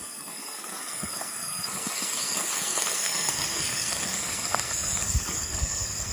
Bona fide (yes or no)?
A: no